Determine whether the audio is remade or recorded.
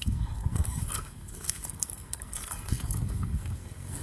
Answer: remade